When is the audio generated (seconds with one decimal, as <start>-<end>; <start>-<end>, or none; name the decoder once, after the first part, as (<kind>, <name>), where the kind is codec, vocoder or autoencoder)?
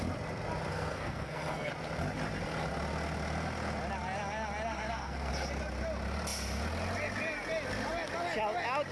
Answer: 0.7-1.7 (codec, SNAC); 4.7-5.3